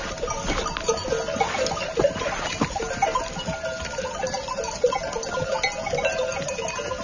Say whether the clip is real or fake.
real